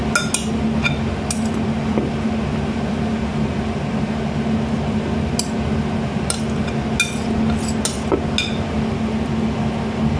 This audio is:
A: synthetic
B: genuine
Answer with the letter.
B